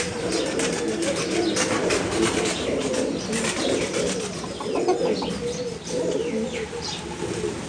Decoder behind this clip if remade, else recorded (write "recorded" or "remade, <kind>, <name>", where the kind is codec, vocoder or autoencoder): recorded